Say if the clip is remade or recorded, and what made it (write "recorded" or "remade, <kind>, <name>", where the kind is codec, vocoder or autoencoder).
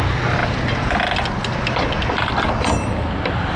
recorded